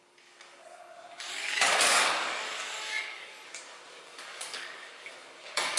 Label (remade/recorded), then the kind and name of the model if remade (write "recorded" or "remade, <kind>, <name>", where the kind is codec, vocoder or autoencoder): remade, codec, DAC